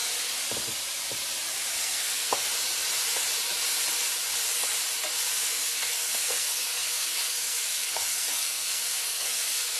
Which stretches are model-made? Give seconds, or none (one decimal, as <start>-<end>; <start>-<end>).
1.7-2.5; 5.3-9.8

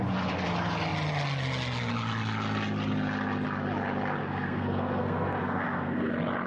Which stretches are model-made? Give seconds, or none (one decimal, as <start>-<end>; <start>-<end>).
4.2-6.1

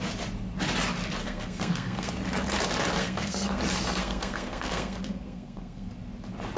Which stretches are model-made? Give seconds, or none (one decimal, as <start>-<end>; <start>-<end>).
1.2-2.1; 3.0-3.6; 4.0-5.9

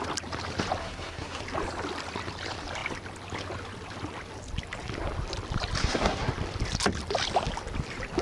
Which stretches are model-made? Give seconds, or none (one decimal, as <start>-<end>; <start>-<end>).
0.8-1.4; 5.8-6.3